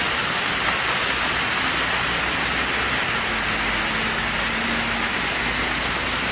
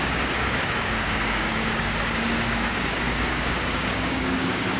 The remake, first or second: second